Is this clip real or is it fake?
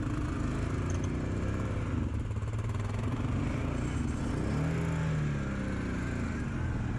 real